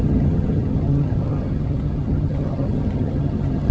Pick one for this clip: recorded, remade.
remade